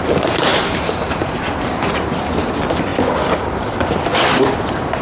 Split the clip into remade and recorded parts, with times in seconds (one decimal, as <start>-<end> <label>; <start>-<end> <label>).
0.0-5.0 recorded